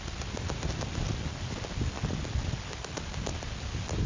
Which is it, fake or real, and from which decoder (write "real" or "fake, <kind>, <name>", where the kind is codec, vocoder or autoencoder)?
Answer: real